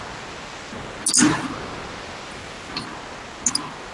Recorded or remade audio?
recorded